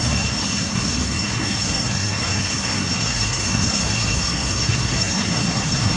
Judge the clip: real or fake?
fake